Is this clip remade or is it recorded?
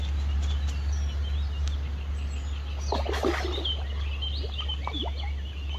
recorded